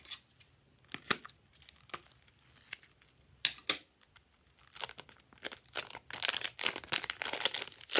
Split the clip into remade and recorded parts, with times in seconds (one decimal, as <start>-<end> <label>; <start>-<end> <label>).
0.0-8.0 recorded